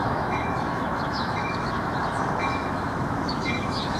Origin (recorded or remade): remade